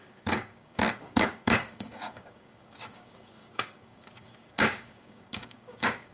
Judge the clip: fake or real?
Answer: fake